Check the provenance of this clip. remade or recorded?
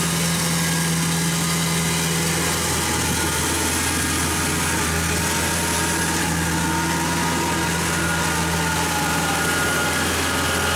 recorded